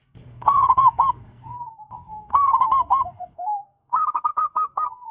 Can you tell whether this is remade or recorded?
remade